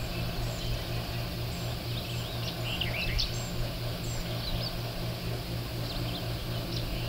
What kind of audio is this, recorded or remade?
recorded